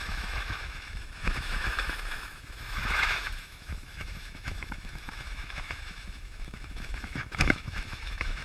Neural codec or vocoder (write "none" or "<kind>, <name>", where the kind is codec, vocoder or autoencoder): autoencoder, DAC-VAE